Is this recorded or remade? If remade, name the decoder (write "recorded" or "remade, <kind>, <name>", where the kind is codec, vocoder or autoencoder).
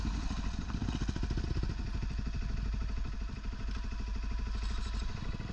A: recorded